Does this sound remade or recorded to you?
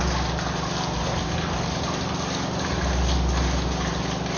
recorded